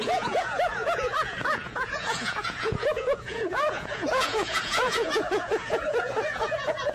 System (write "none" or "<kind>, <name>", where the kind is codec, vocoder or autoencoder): vocoder, Vocos